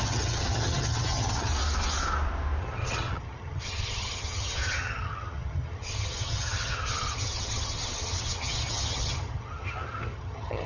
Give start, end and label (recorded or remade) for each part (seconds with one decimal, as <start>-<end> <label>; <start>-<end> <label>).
0.0-1.5 remade; 1.5-2.6 recorded; 2.6-10.7 remade